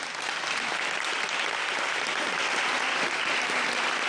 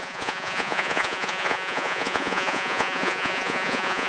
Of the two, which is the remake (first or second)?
second